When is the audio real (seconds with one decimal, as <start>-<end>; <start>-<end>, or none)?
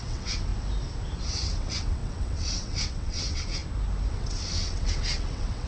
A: 0.5-1.2; 3.6-4.1